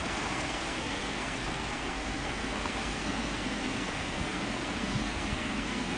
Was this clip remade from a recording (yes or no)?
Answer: yes